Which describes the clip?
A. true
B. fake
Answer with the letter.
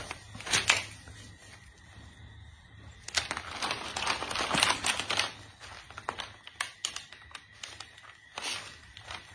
A